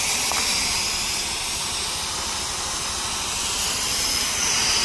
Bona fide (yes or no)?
yes